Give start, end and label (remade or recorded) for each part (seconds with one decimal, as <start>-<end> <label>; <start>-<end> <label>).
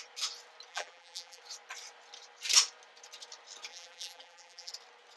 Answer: 0.0-0.7 recorded; 0.7-1.4 remade; 1.4-3.7 recorded; 3.7-4.7 remade; 4.7-5.2 recorded